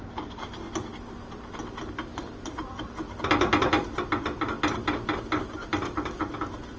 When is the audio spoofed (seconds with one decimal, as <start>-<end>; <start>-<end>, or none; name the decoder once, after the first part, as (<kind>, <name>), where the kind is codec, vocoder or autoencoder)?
2.1-2.9 (vocoder, BigVGAN v2)